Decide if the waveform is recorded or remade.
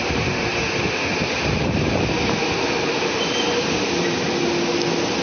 recorded